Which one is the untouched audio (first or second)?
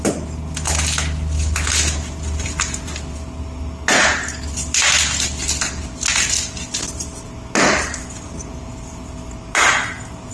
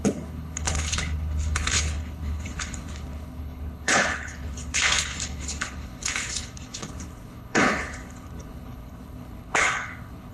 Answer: first